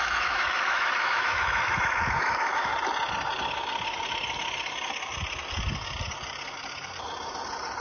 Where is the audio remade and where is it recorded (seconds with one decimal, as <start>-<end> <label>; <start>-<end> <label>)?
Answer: 0.0-2.7 remade; 2.7-7.8 recorded

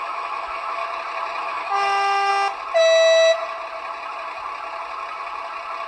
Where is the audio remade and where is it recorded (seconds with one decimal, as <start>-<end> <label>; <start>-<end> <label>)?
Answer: 0.0-0.8 remade; 0.8-1.4 recorded; 1.4-2.3 remade; 2.3-5.9 recorded

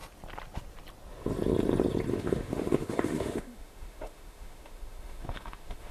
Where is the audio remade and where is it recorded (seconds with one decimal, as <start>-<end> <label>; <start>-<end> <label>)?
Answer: 0.0-2.1 recorded; 2.1-5.9 remade

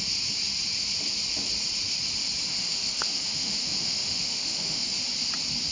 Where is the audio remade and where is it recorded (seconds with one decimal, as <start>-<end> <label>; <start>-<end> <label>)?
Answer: 0.0-2.5 recorded; 2.5-4.8 remade; 4.8-5.7 recorded

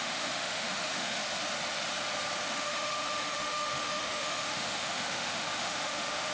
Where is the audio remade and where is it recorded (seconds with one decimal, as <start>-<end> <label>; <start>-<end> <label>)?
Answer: 0.0-1.2 remade; 1.2-2.5 recorded; 2.5-6.3 remade

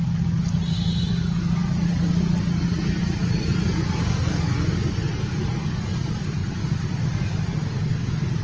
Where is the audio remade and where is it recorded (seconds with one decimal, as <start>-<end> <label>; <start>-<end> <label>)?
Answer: 0.0-8.4 recorded